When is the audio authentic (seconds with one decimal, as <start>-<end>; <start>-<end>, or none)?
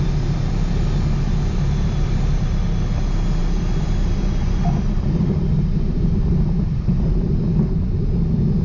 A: 0.0-3.4; 5.3-8.6